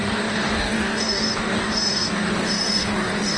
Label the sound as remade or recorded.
remade